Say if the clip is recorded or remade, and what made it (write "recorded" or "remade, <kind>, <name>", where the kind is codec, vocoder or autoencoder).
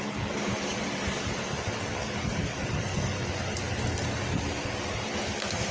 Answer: recorded